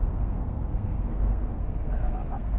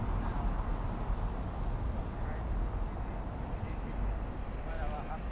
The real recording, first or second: second